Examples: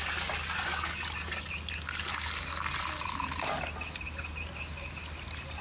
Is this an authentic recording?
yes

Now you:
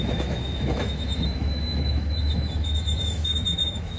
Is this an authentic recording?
no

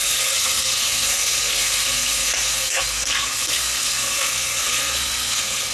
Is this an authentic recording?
no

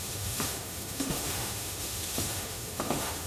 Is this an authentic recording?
no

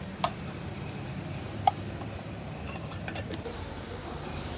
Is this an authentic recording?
no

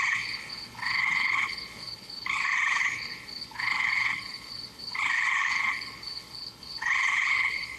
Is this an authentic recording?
no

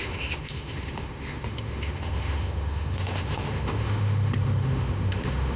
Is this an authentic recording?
no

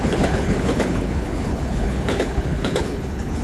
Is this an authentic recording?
no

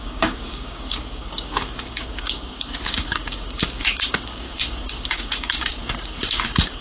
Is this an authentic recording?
no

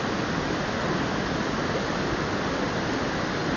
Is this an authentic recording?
yes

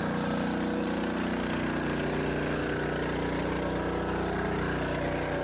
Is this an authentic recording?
yes